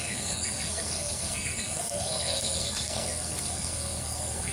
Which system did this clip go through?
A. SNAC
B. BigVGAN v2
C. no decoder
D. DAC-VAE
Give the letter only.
A